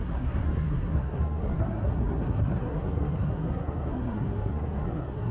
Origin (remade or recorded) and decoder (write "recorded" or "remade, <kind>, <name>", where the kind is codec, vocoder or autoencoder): remade, codec, SNAC